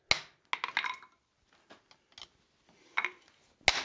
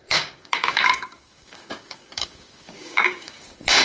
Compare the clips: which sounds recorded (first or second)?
first